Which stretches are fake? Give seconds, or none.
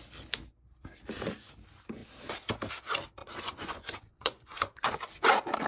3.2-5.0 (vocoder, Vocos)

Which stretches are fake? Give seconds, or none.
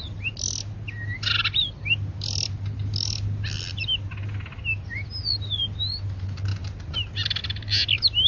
none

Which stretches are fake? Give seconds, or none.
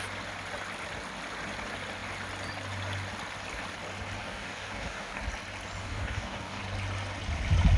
4.2-5.2 (codec, DAC); 5.8-6.6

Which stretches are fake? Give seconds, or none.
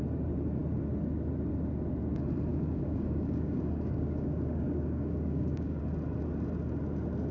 2.5-5.8 (codec, DAC)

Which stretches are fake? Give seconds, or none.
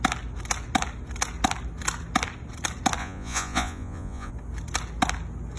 3.0-4.3 (vocoder, Vocos)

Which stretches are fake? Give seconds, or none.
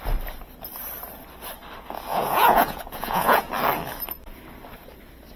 2.1-3.5 (vocoder, Vocos)